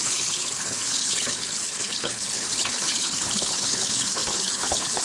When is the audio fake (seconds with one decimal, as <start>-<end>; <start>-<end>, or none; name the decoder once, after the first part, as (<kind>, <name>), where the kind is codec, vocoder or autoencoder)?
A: 0.0-5.0 (codec, HILCodec)